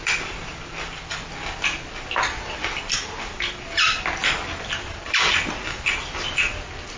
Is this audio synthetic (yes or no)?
no